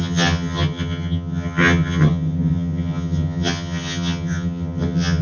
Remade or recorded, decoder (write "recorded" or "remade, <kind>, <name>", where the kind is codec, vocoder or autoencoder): remade, vocoder, HiFi-GAN